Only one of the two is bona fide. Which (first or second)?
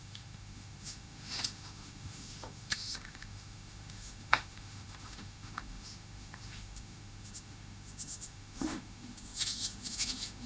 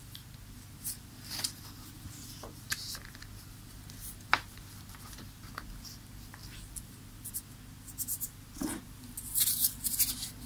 second